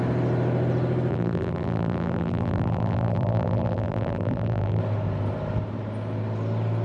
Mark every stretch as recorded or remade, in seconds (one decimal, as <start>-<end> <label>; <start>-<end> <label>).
0.0-1.1 recorded; 1.1-4.8 remade; 4.8-6.8 recorded